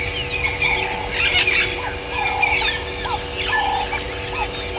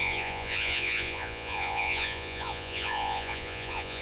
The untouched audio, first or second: first